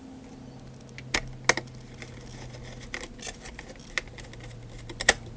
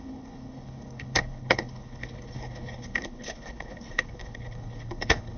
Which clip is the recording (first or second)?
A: first